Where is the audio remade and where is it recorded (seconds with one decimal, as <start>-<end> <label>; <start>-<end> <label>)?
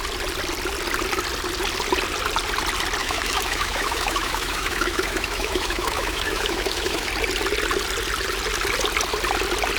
0.0-3.0 recorded; 3.0-7.1 remade; 7.1-9.8 recorded